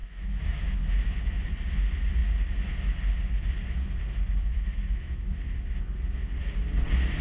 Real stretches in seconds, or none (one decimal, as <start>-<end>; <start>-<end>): 0.8-4.5; 5.3-7.2